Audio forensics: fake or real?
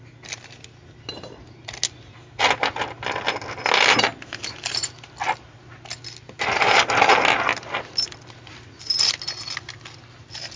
real